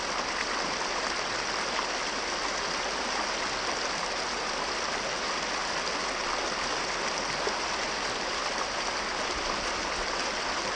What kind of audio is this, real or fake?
real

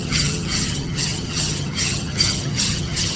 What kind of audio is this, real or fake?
fake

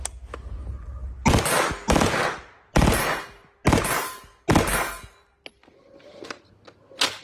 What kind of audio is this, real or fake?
real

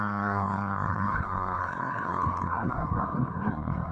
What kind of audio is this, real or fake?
fake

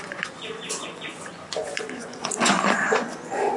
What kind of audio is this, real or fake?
fake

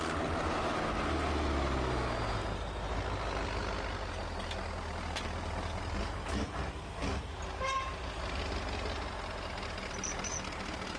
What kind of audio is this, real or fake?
real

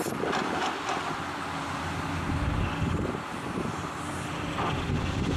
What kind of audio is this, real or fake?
real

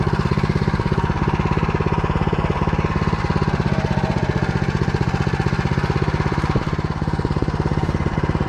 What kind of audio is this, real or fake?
fake